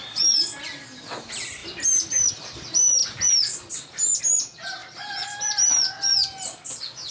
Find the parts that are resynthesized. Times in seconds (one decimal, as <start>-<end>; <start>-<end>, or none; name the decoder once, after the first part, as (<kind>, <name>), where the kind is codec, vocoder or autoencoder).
none

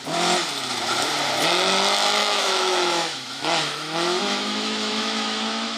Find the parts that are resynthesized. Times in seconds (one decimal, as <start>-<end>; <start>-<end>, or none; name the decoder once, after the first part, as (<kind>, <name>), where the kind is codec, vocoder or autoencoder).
2.2-5.8 (autoencoder, DAC-VAE)

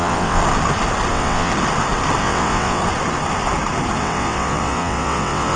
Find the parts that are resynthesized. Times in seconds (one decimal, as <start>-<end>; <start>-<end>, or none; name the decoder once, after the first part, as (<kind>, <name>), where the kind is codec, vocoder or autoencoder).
0.0-0.4 (vocoder, WaveNeXt); 1.1-1.5; 2.2-2.8; 4.0-5.6

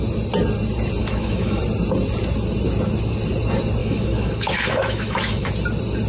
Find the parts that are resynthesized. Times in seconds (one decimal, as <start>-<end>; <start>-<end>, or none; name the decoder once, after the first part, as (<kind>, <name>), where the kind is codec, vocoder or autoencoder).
1.0-1.6 (autoencoder, DAC-VAE); 3.8-5.5

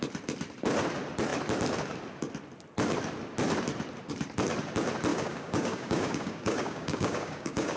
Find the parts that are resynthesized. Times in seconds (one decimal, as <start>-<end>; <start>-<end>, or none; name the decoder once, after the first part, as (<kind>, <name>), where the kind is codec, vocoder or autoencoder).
5.1-7.8 (codec, DAC)